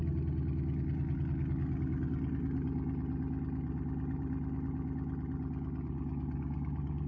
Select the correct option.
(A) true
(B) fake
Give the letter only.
A